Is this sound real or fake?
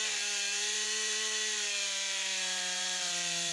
fake